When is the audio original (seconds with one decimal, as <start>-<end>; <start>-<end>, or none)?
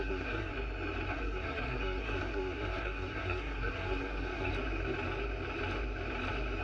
0.5-1.1; 4.5-6.6